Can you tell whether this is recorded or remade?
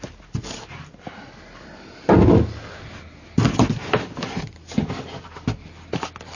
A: recorded